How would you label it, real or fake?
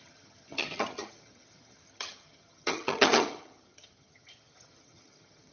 fake